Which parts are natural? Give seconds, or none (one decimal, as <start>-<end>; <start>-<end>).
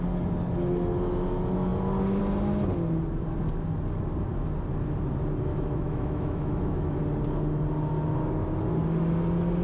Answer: 0.0-5.5; 7.0-9.6